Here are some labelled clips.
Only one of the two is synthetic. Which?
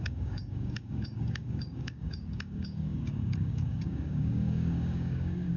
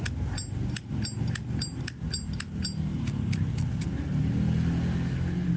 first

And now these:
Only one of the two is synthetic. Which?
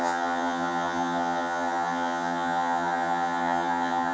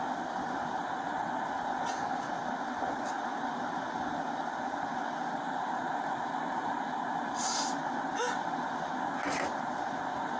first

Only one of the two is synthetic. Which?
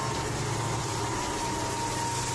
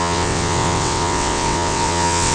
second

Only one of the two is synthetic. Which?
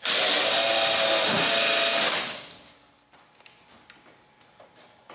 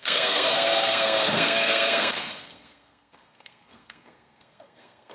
second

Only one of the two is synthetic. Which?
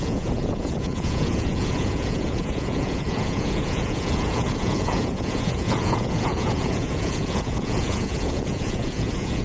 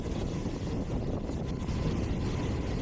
first